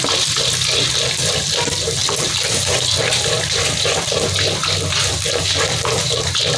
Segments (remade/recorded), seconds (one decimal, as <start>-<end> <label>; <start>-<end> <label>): 0.0-2.0 recorded; 2.0-5.4 remade; 5.4-6.6 recorded